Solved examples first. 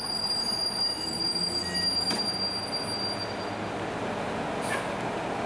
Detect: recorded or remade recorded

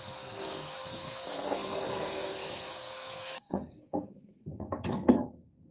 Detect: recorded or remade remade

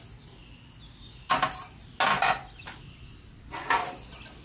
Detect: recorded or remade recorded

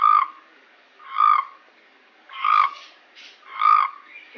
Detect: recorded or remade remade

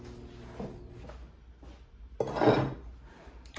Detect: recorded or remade recorded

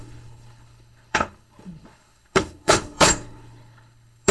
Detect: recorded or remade remade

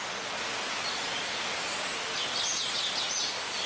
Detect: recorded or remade recorded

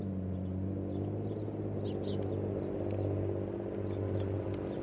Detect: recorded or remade recorded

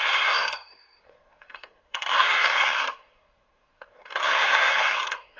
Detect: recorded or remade remade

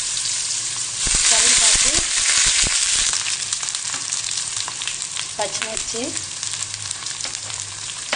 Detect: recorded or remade remade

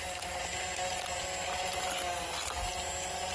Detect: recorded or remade recorded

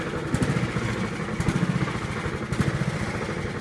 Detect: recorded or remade recorded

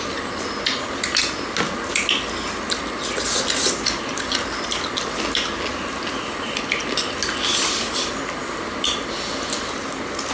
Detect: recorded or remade recorded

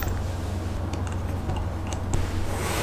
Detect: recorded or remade recorded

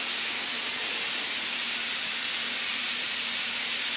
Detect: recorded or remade remade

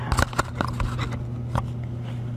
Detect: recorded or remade recorded